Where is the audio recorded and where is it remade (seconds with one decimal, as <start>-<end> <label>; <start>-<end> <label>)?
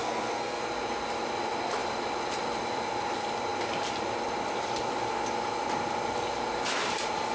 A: 0.0-0.6 remade; 0.6-7.3 recorded